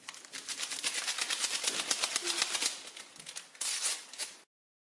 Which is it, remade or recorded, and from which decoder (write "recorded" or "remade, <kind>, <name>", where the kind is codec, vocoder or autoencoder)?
recorded